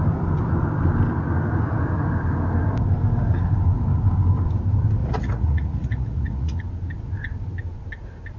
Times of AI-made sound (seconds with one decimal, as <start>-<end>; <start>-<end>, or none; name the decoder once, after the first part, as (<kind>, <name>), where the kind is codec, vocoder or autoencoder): 5.0-6.6 (vocoder, Vocos)